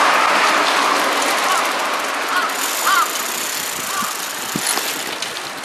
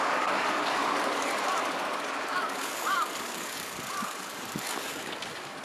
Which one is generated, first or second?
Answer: second